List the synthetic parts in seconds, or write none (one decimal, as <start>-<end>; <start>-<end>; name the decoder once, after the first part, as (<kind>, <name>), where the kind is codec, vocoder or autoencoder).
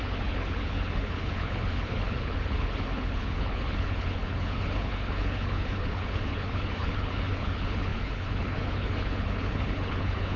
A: 0.0-10.4 (codec, HILCodec)